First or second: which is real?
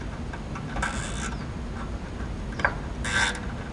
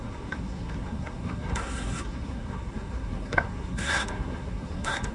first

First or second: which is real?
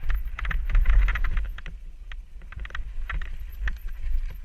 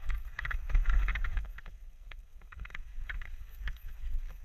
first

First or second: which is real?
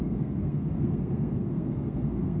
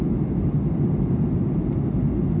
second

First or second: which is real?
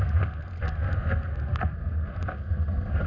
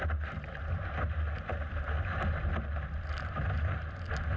second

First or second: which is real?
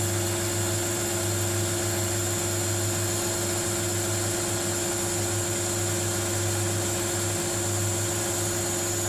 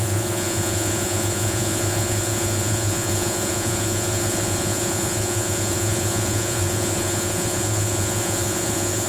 first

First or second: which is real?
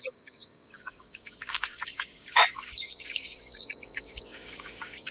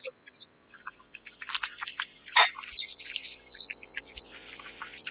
second